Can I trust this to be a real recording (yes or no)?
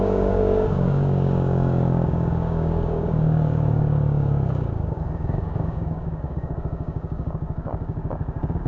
no